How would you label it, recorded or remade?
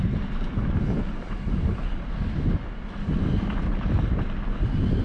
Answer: recorded